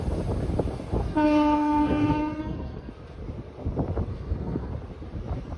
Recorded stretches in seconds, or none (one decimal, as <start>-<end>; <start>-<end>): 0.0-1.0; 2.9-4.1; 4.7-5.6